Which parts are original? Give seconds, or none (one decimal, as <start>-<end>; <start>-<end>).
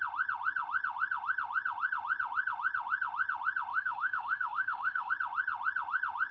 0.0-3.7; 5.1-6.3